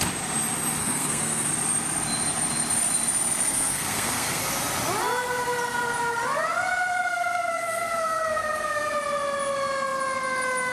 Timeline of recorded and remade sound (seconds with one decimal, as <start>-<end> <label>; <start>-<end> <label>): 0.0-0.8 recorded; 0.8-1.5 remade; 1.5-3.5 recorded; 3.5-4.4 remade; 4.4-7.1 recorded; 7.1-8.9 remade; 8.9-10.7 recorded